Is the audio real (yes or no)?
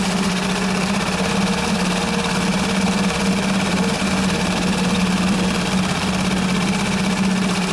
no